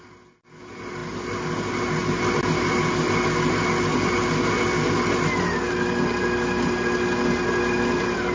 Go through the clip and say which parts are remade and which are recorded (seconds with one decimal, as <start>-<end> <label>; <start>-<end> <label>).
0.0-8.3 recorded